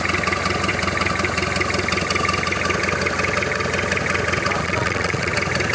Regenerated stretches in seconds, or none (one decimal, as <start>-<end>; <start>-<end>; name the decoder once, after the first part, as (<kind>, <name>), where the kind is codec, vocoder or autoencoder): 4.6-5.3 (vocoder, Vocos)